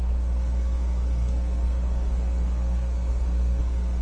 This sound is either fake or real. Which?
fake